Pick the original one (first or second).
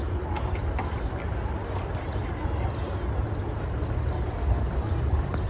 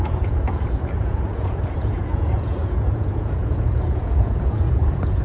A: first